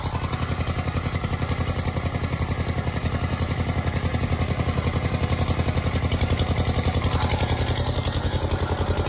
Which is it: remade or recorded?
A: recorded